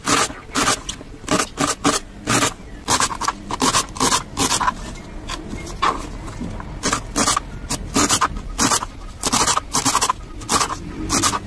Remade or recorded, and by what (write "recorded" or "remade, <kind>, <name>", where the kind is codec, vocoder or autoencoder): recorded